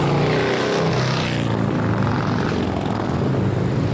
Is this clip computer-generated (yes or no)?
no